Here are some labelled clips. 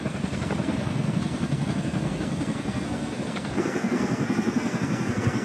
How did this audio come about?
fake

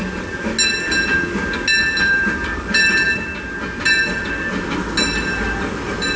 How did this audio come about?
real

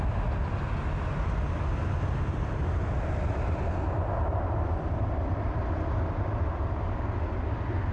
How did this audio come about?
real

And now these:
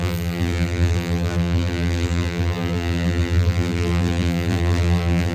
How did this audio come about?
fake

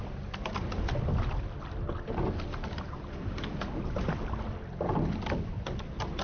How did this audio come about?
real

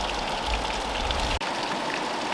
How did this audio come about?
real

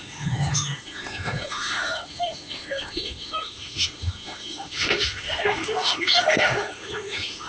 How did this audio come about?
fake